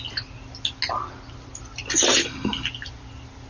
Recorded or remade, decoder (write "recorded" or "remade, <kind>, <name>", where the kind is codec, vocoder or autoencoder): recorded